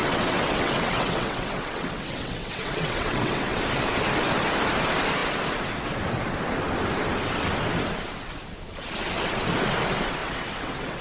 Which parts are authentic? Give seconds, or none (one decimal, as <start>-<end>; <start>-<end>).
3.6-10.2